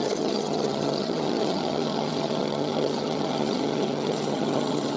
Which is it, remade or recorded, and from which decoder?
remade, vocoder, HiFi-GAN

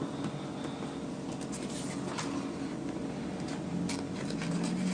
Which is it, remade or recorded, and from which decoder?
recorded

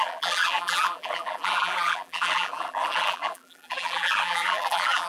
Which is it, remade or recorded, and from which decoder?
remade, vocoder, BigVGAN v2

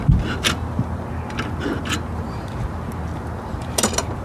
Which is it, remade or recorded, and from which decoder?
recorded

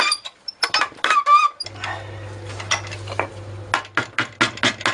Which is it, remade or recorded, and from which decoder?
recorded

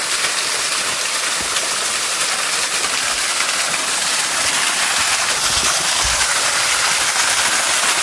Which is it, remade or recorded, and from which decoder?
recorded